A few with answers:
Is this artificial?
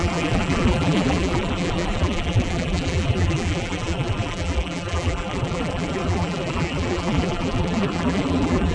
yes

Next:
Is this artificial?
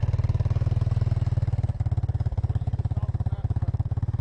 no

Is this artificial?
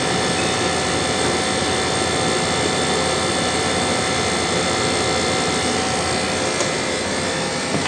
no